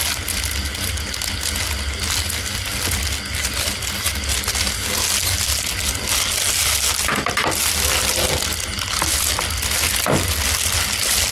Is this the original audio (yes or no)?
yes